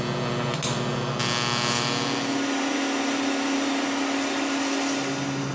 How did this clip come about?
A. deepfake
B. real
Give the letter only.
B